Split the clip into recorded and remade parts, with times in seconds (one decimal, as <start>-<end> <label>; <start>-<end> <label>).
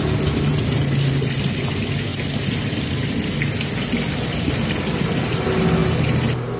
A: 0.0-6.6 recorded